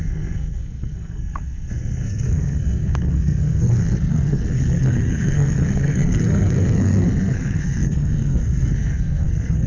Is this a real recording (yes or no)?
no